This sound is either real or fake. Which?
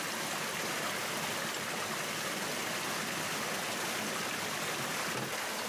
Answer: real